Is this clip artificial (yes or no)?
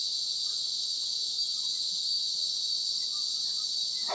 no